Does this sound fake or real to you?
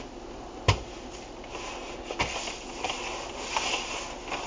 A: real